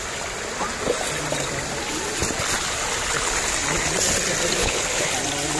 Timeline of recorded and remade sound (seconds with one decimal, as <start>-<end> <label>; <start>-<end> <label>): 0.0-4.6 recorded; 4.6-5.1 remade; 5.1-5.6 recorded